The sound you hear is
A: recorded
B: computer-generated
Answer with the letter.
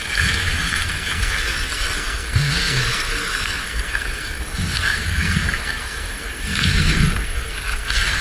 B